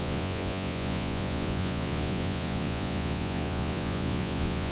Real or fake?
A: fake